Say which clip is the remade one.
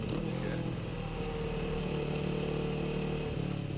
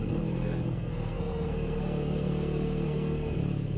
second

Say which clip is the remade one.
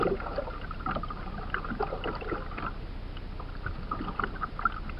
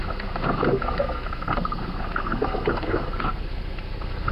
second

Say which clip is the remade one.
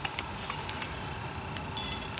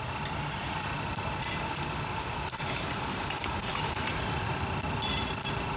second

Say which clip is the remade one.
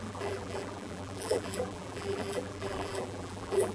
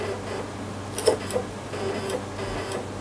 first